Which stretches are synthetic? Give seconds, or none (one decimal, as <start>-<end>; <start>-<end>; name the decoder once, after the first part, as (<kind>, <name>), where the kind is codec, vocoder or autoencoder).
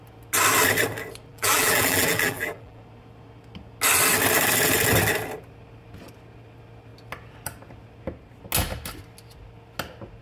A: 1.3-2.8 (vocoder, BigVGAN v2)